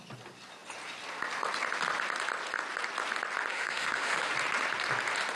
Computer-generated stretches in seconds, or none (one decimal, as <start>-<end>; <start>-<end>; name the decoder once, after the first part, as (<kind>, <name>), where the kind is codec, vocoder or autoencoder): 3.5-4.3 (autoencoder, DAC-VAE)